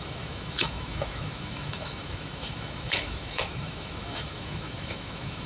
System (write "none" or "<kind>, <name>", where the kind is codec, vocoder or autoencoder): autoencoder, DAC-VAE